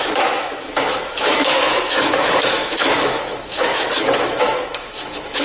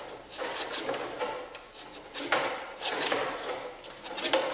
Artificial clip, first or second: first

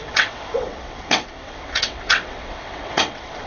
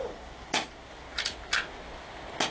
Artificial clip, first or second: first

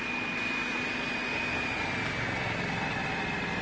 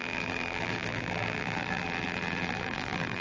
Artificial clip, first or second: second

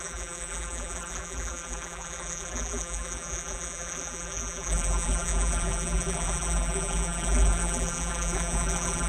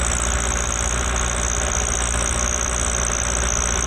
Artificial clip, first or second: first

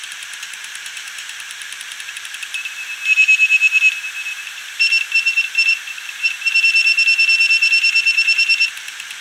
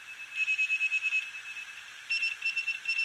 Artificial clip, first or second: first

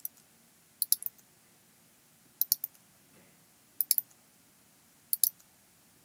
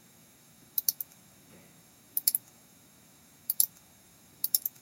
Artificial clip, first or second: second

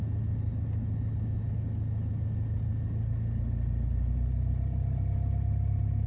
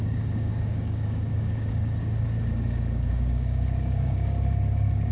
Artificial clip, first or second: second